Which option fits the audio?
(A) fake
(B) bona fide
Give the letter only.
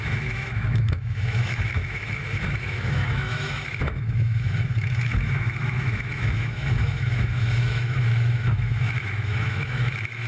A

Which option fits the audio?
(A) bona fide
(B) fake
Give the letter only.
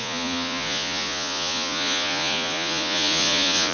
B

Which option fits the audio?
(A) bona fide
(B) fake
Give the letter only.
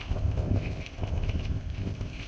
B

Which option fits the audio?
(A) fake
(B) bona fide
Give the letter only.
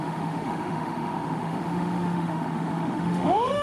A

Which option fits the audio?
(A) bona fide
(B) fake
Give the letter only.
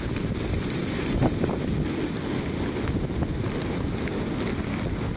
A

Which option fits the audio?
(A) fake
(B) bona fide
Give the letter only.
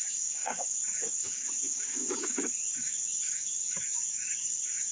A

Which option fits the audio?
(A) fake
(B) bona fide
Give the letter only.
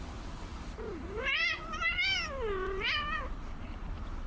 A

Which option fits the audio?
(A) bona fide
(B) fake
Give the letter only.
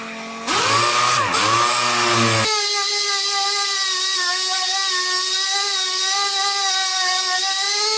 A